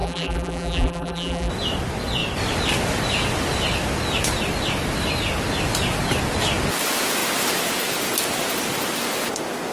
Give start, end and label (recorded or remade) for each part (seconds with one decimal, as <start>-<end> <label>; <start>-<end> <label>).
0.0-1.5 remade; 1.5-9.7 recorded